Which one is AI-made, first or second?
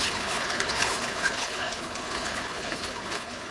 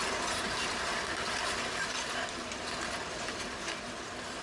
first